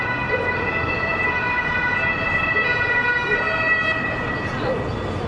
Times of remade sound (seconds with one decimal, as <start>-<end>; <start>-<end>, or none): none